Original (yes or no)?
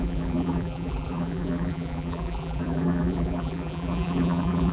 no